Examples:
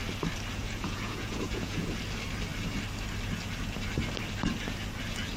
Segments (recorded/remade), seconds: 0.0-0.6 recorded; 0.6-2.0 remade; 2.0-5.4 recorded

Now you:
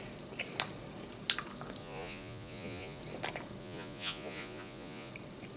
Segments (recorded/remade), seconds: 0.0-1.8 recorded; 1.8-3.0 remade; 3.0-3.6 recorded; 3.6-5.1 remade; 5.1-5.6 recorded

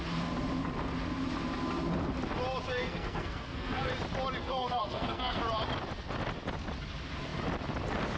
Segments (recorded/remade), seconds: 0.0-2.7 recorded; 2.7-3.9 remade; 3.9-4.4 recorded; 4.4-5.4 remade; 5.4-8.2 recorded

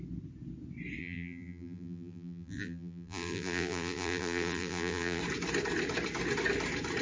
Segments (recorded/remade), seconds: 0.0-1.0 recorded; 1.0-5.2 remade; 5.2-7.0 recorded

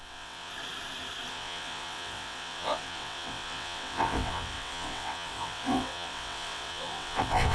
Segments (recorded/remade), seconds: 0.0-0.5 remade; 0.5-1.3 recorded; 1.3-7.5 remade

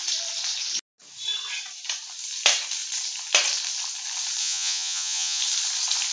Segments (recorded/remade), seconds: 0.0-4.4 recorded; 4.4-5.4 remade; 5.4-6.1 recorded

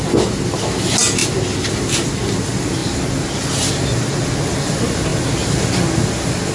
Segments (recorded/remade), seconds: 0.0-6.5 recorded